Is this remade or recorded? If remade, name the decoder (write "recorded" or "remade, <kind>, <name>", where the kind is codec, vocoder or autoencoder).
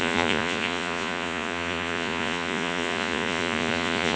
remade, vocoder, Vocos